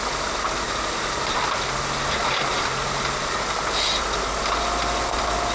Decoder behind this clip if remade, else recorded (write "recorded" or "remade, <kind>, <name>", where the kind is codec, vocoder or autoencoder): recorded